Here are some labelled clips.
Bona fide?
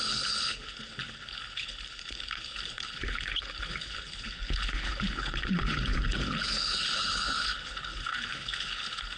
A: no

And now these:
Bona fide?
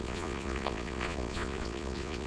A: no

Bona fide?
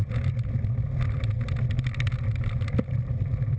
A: yes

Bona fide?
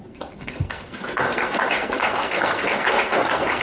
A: no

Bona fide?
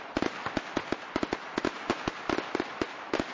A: yes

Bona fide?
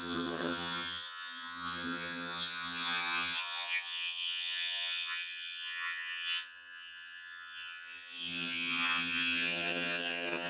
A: no